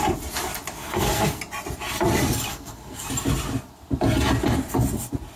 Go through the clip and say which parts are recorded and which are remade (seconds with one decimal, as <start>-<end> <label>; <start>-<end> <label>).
0.0-0.8 recorded; 0.8-1.4 remade; 1.4-2.5 recorded; 2.5-3.1 remade; 3.1-5.4 recorded